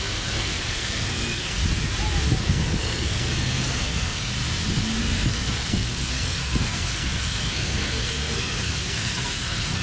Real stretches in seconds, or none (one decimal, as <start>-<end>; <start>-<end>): 1.6-2.4; 4.3-5.0